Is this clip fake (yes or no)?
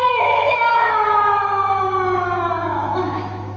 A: yes